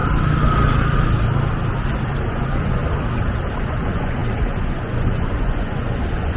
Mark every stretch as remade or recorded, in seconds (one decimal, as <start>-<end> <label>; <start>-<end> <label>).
0.0-2.3 recorded; 2.3-2.8 remade; 2.8-3.6 recorded; 3.6-6.4 remade